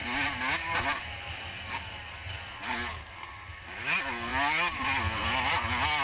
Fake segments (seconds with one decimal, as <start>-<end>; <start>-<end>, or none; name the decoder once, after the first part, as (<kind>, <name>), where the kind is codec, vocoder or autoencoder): none